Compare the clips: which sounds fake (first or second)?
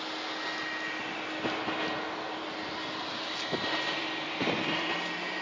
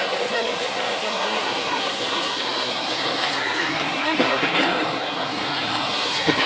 second